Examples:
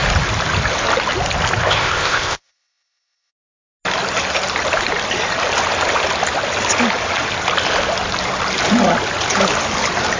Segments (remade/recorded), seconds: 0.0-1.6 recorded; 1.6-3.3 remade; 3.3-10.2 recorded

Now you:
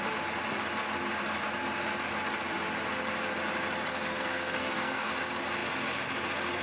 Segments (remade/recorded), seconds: 0.0-3.9 recorded; 3.9-5.1 remade; 5.1-6.6 recorded

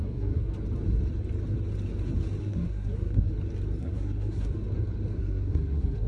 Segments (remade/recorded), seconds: 0.0-0.5 remade; 0.5-2.4 recorded; 2.4-3.3 remade; 3.3-3.8 recorded; 3.8-4.5 remade; 4.5-5.2 recorded; 5.2-6.1 remade

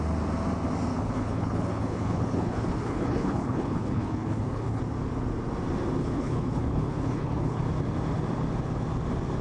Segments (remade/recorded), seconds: 0.0-0.9 recorded; 0.9-4.8 remade; 4.8-6.0 recorded; 6.0-7.6 remade; 7.6-9.4 recorded

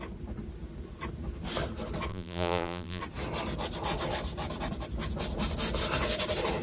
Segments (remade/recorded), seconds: 0.0-2.1 recorded; 2.1-3.0 remade; 3.0-6.6 recorded

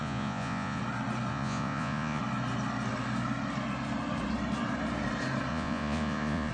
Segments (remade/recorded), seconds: 0.0-0.8 remade; 0.8-1.3 recorded; 1.3-2.2 remade; 2.2-5.5 recorded; 5.5-6.5 remade

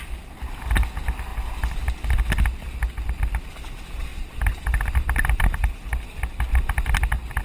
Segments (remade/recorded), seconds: 0.0-4.1 recorded; 4.1-6.0 remade; 6.0-7.4 recorded

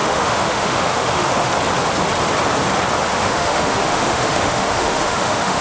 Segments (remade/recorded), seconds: 0.0-1.5 remade; 1.5-3.1 recorded; 3.1-5.6 remade